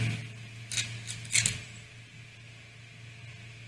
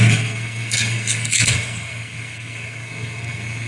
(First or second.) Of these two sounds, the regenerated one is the second